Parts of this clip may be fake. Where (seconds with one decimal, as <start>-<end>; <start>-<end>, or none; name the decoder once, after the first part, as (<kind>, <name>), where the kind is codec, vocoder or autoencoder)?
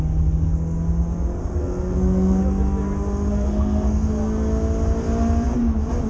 1.4-2.4 (codec, SNAC); 3.3-4.1